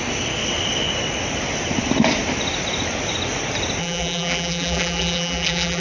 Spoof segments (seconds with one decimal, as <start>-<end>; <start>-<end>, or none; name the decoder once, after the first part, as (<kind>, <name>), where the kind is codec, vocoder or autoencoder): 3.8-5.8 (vocoder, BigVGAN v2)